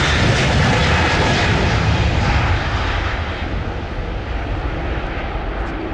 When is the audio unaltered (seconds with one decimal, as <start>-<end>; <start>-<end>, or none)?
0.0-5.9